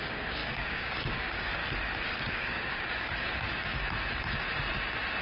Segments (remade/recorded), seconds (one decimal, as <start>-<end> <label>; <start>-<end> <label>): 0.0-1.6 remade; 1.6-2.3 recorded; 2.3-3.8 remade; 3.8-5.2 recorded

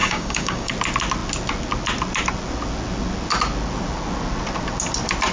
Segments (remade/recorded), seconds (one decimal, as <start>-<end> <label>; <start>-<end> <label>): 0.0-0.7 remade; 0.7-5.3 recorded

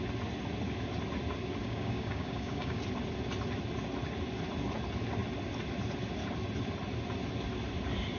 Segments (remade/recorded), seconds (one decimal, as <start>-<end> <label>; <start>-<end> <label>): 0.0-1.6 recorded; 1.6-2.8 remade; 2.8-8.2 recorded

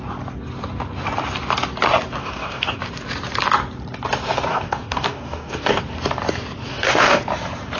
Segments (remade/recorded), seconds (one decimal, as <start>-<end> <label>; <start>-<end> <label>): 0.0-2.2 recorded; 2.2-2.8 remade; 2.8-4.5 recorded; 4.5-5.8 remade; 5.8-6.7 recorded; 6.7-7.2 remade; 7.2-7.8 recorded

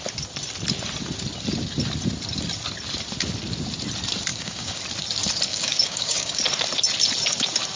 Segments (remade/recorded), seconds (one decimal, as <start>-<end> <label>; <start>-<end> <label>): 0.0-4.3 recorded; 4.3-4.8 remade; 4.8-5.5 recorded; 5.5-6.4 remade; 6.4-7.8 recorded

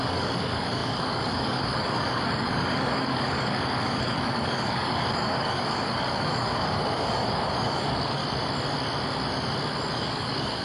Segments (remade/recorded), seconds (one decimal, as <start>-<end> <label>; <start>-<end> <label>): 0.0-8.2 remade; 8.2-9.9 recorded; 9.9-10.6 remade

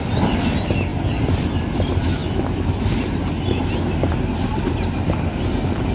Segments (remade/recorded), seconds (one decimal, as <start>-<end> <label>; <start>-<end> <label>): 0.0-5.9 recorded